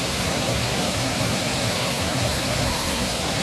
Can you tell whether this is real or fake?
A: fake